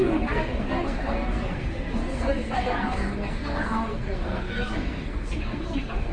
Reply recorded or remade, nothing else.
remade